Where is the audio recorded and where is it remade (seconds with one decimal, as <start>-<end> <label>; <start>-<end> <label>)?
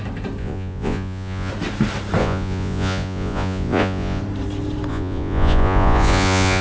0.0-0.4 recorded; 0.4-1.5 remade; 1.5-2.2 recorded; 2.2-4.2 remade; 4.2-4.9 recorded; 4.9-6.6 remade